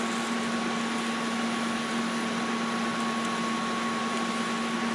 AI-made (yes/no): no